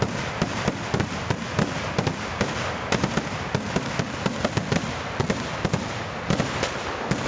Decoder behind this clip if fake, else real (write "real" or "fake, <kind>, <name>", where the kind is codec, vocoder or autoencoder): real